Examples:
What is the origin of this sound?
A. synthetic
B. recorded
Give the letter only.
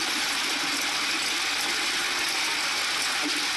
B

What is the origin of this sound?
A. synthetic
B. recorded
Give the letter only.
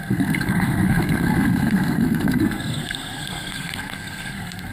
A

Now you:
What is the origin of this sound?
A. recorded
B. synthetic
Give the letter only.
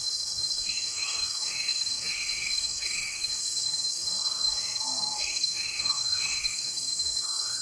B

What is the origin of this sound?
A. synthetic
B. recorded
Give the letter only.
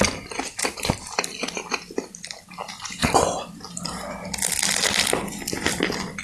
B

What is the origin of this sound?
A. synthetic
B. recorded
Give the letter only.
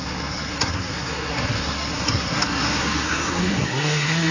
A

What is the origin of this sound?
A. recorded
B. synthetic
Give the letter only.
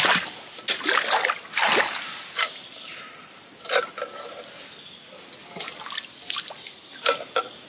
A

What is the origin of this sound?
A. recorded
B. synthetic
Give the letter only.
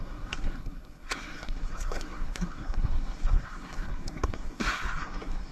B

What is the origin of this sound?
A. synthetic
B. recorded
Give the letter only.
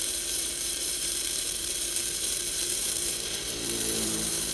A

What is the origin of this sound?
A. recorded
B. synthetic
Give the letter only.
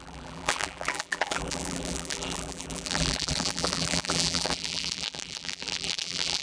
B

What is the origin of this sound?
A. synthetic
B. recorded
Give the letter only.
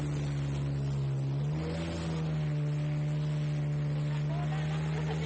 B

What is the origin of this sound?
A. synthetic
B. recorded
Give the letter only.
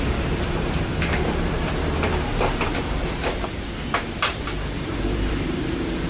A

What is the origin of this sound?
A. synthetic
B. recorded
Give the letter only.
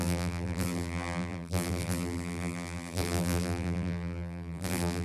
A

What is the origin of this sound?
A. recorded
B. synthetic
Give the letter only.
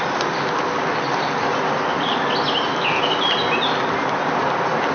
A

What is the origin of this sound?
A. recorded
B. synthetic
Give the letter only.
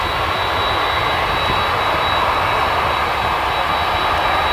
A